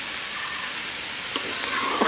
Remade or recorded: recorded